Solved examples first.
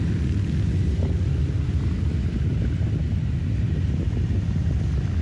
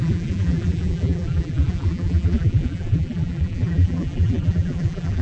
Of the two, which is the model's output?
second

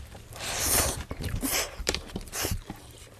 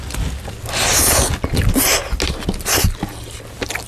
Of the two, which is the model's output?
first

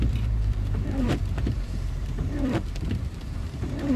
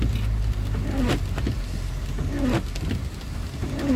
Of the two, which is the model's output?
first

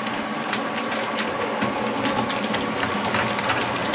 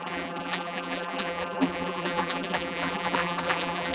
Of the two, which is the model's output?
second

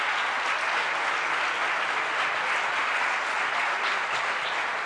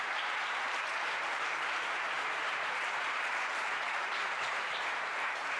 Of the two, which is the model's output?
second